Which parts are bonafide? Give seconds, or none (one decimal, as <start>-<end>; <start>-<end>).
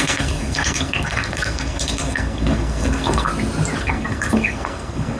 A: 3.3-3.8